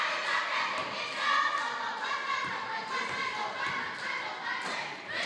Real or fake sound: fake